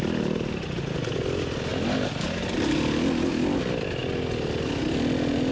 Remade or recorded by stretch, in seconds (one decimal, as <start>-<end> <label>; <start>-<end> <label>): 0.0-5.5 recorded